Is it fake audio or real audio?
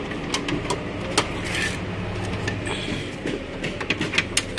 real